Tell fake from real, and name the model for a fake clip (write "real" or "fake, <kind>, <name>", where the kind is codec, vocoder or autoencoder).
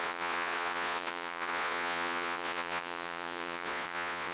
fake, vocoder, Vocos